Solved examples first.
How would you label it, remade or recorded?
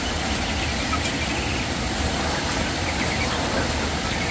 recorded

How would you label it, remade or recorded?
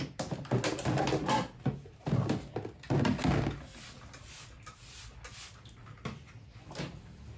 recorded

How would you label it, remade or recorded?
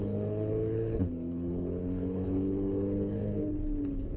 remade